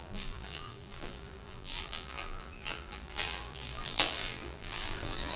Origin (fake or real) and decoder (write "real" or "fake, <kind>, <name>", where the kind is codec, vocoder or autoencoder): fake, vocoder, BigVGAN v2